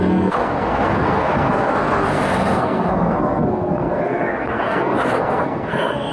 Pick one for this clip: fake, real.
fake